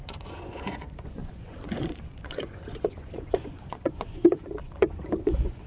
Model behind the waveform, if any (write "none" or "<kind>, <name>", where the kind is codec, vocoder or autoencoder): vocoder, Vocos